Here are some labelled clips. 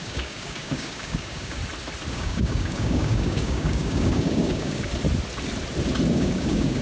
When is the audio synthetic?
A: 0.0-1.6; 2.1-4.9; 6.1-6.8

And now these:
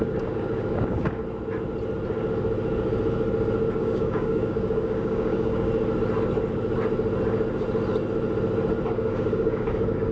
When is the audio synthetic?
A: 0.0-1.2; 3.8-5.7; 8.9-10.1